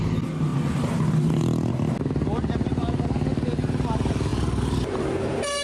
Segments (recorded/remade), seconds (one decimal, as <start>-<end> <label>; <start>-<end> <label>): 0.0-5.6 recorded